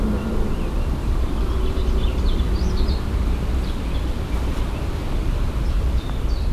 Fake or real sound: fake